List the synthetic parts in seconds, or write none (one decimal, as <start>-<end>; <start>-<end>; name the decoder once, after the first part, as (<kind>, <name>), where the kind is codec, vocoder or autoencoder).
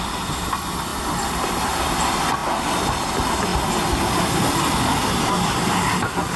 none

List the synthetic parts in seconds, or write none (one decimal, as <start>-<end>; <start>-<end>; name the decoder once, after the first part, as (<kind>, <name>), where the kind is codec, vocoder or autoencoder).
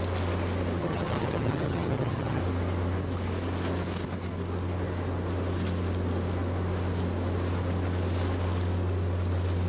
0.8-2.4 (vocoder, HiFi-GAN)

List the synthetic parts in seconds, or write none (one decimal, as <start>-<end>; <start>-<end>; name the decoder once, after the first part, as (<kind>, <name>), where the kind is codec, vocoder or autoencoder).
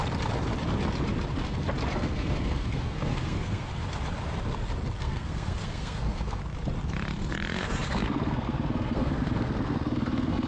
1.9-3.7 (codec, SNAC); 5.0-6.4; 7.5-10.5